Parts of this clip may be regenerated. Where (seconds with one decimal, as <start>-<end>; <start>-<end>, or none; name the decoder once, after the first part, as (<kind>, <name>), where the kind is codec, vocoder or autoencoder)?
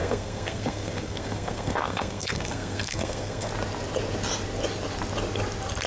0.0-3.5 (codec, SNAC)